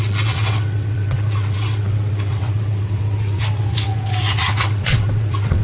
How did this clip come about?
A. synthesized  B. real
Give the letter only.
A